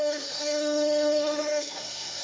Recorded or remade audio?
remade